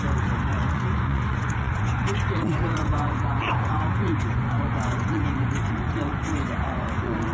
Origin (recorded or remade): remade